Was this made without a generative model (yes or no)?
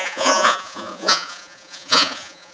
no